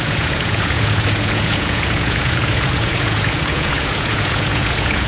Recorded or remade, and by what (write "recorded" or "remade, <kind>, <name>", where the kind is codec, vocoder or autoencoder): remade, vocoder, Vocos